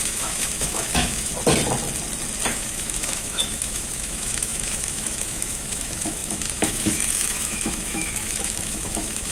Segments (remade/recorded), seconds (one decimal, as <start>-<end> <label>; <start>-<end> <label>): 0.0-1.3 remade; 1.3-2.5 recorded; 2.5-9.3 remade